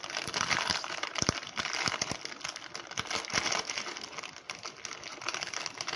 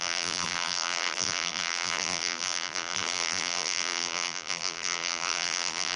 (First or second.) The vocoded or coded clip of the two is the second